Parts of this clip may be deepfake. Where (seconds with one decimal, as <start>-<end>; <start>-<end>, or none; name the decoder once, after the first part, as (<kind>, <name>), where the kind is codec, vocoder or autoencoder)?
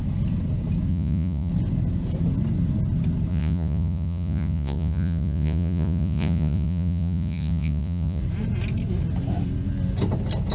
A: 0.9-1.5 (vocoder, Vocos); 3.3-8.2